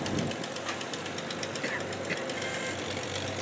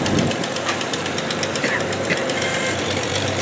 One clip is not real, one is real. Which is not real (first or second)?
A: second